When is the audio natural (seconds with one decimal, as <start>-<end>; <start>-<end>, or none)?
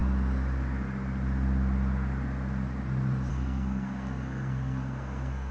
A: 0.0-3.3